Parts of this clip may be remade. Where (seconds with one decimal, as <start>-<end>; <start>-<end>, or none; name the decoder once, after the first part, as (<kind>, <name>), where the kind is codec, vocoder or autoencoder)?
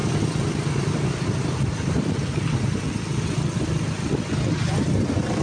none